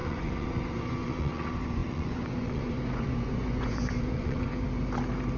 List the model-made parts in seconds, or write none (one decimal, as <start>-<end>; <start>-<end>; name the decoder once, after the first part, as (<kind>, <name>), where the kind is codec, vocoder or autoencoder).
0.0-4.5 (vocoder, Vocos)